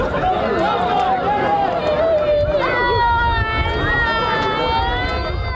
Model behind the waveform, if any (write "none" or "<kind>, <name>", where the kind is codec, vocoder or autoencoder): none